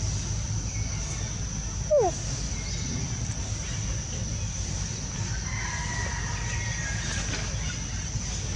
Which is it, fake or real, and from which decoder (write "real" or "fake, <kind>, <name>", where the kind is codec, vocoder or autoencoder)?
real